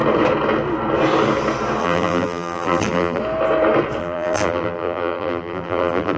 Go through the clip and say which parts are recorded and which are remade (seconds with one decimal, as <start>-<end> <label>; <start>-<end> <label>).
0.0-1.8 recorded; 1.8-3.2 remade; 3.2-4.0 recorded; 4.0-6.2 remade